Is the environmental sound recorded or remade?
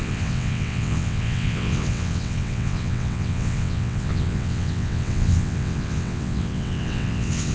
remade